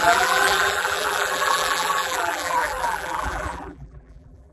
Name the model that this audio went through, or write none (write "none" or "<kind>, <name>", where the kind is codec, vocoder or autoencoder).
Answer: vocoder, BigVGAN v2